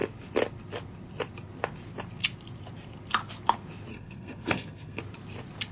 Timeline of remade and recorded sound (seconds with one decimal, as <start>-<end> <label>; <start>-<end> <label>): 0.0-3.9 recorded; 3.9-5.0 remade; 5.0-5.7 recorded

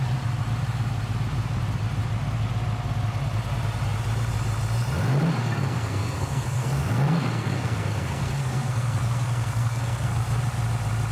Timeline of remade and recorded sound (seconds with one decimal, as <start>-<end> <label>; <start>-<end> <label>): 0.0-5.4 recorded; 5.4-10.4 remade; 10.4-11.1 recorded

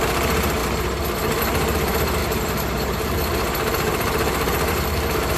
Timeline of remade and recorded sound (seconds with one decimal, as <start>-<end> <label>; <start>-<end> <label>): 0.0-0.6 remade; 0.6-1.4 recorded; 1.4-5.4 remade

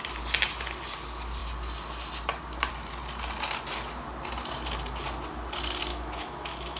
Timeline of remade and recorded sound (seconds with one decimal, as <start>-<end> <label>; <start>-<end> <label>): 0.0-5.9 recorded; 5.9-6.8 remade

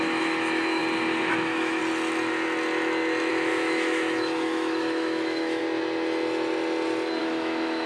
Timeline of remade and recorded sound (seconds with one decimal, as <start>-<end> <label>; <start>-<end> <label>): 0.0-0.8 remade; 0.8-1.3 recorded; 1.3-1.8 remade; 1.8-3.3 recorded; 3.3-5.6 remade; 5.6-7.2 recorded; 7.2-7.9 remade

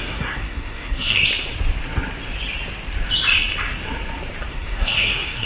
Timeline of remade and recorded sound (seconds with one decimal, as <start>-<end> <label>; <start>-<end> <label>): 0.0-1.2 remade; 1.2-4.5 recorded; 4.5-5.5 remade